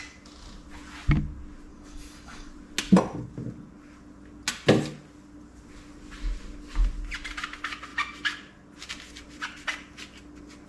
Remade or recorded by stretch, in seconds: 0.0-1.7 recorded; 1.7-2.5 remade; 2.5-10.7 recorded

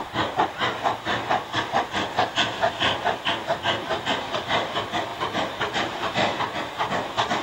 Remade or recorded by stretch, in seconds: 0.0-5.1 recorded; 5.1-6.4 remade; 6.4-7.4 recorded